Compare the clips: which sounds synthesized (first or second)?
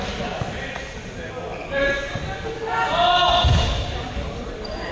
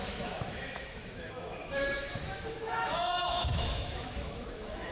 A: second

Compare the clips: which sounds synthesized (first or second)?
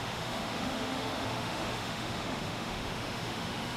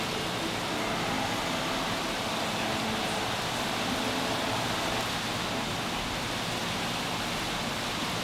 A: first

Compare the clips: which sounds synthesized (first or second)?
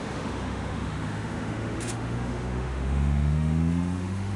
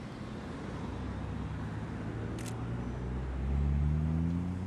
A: first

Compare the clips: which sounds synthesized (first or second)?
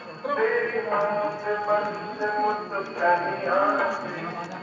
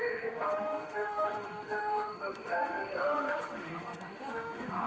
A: second